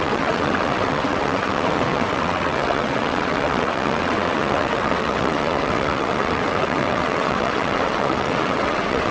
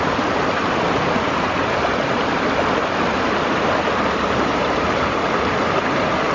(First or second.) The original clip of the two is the second